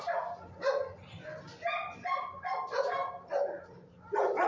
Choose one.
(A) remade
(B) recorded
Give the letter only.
B